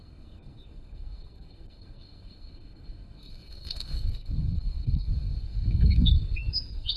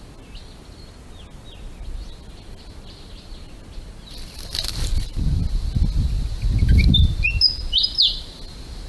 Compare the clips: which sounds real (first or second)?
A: second